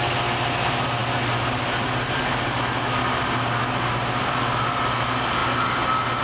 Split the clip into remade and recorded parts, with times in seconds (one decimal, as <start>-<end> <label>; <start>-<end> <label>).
0.0-6.2 recorded